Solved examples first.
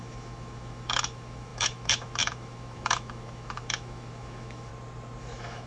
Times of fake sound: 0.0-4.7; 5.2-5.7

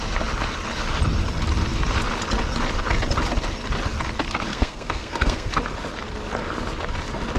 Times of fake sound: 4.5-5.5

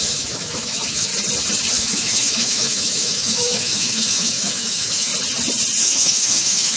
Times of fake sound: 0.0-1.1; 1.7-5.1; 5.8-6.8

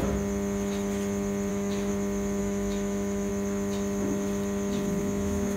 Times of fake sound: 1.5-1.9; 2.4-3.3; 5.0-5.6

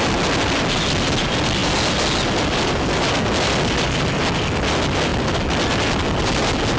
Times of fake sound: none

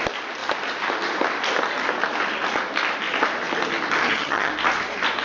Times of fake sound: 4.0-4.5

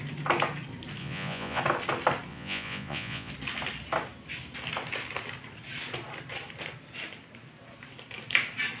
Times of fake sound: 1.0-1.6; 2.3-3.3

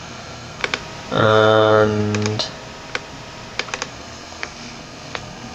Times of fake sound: 0.0-0.6; 1.2-2.0; 3.9-5.5